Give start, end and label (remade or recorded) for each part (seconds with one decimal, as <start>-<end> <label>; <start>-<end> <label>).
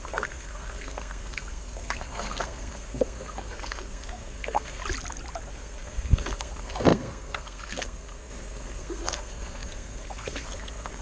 0.0-4.8 remade; 4.8-5.5 recorded; 5.5-11.0 remade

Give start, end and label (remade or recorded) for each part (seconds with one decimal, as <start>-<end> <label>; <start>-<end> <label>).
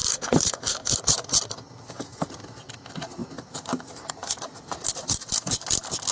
0.0-1.0 remade; 1.0-6.1 recorded